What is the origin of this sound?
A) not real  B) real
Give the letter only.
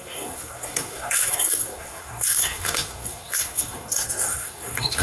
A